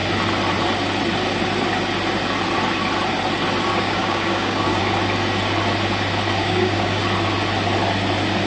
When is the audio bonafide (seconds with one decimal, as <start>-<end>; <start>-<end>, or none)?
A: 0.0-3.7; 4.8-6.4; 7.0-8.5